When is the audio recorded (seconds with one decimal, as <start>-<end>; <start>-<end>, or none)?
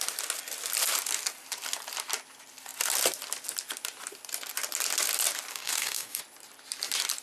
0.0-5.5; 6.2-7.2